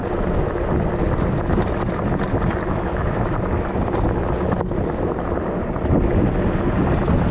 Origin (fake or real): real